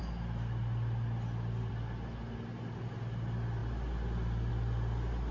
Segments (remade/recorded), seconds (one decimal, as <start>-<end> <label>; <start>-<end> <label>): 0.0-5.3 recorded